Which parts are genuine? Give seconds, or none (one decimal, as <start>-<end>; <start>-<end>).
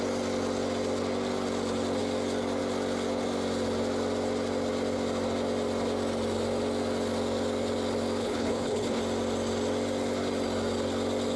0.0-8.2; 9.0-11.4